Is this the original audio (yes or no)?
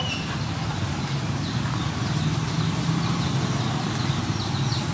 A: yes